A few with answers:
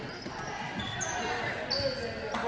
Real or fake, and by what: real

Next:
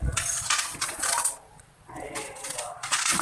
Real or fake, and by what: fake, vocoder, Vocos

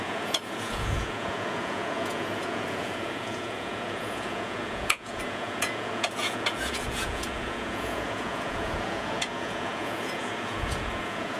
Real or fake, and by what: fake, vocoder, Vocos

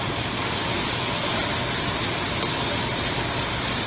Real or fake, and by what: real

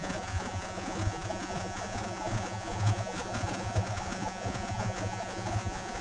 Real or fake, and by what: fake, vocoder, Vocos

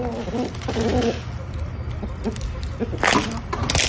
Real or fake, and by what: real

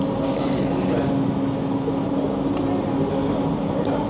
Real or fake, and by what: real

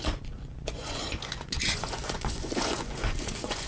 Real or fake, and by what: fake, vocoder, Vocos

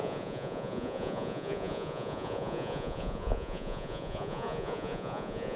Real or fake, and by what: fake, vocoder, Vocos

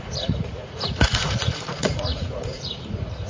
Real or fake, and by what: fake, vocoder, Vocos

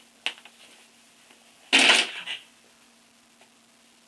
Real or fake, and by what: real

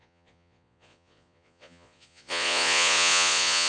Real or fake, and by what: fake, vocoder, Vocos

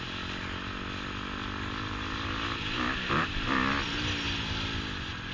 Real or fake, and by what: real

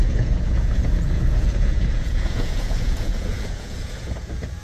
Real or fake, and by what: fake, vocoder, Vocos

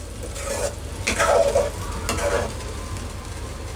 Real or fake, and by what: real